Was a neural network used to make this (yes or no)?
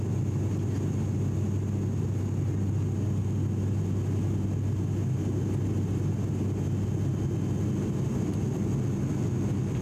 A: no